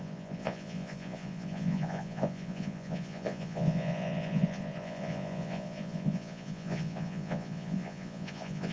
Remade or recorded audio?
remade